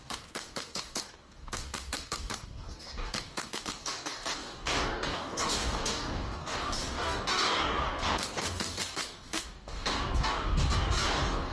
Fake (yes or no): yes